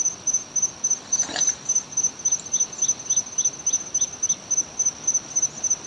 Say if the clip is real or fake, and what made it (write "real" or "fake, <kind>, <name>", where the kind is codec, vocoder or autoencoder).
real